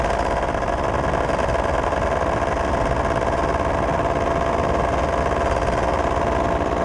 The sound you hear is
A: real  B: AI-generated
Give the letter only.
A